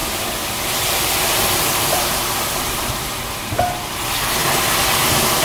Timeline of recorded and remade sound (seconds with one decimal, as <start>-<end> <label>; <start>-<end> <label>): 0.0-2.9 remade; 2.9-5.4 recorded

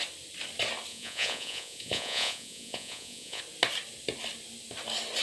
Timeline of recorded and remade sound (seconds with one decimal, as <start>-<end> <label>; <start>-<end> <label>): 0.0-0.9 recorded; 0.9-3.4 remade; 3.4-5.2 recorded

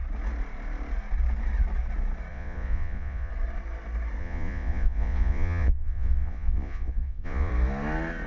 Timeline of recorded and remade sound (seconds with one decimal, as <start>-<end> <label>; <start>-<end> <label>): 0.0-2.3 recorded; 2.3-3.3 remade; 3.3-4.2 recorded; 4.2-7.5 remade; 7.5-8.3 recorded

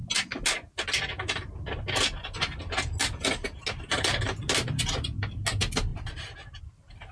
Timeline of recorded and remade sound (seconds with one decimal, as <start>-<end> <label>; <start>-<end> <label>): 0.0-5.9 recorded; 5.9-6.6 remade; 6.6-7.1 recorded

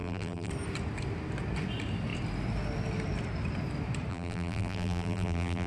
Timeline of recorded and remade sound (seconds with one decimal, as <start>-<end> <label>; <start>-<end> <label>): 0.0-0.5 remade; 0.5-4.1 recorded; 4.1-5.7 remade

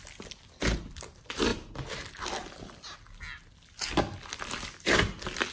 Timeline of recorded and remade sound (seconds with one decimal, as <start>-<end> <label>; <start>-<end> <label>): 0.0-5.5 recorded

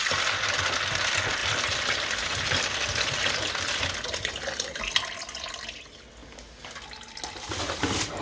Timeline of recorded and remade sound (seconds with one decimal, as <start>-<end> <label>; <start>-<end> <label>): 0.0-1.4 recorded; 1.4-4.8 remade; 4.8-8.2 recorded